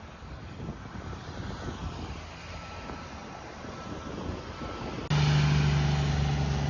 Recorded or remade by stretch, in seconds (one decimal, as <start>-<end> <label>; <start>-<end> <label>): 0.0-6.7 recorded